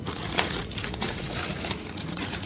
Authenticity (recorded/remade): remade